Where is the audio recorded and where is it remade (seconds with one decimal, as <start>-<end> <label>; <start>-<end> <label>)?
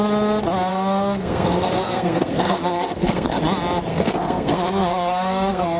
0.0-0.7 recorded; 0.7-3.4 remade; 3.4-3.9 recorded; 3.9-5.8 remade